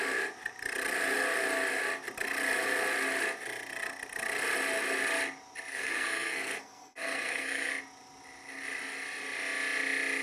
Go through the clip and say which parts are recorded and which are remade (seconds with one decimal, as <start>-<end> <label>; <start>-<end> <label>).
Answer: 0.0-5.7 recorded; 5.7-7.7 remade; 7.7-10.2 recorded

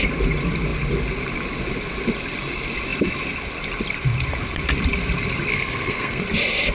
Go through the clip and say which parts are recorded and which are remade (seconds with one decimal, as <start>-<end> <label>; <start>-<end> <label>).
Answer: 0.0-5.5 recorded; 5.5-6.2 remade; 6.2-6.7 recorded